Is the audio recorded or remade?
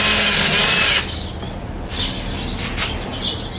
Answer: recorded